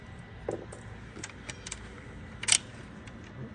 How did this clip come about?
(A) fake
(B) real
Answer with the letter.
B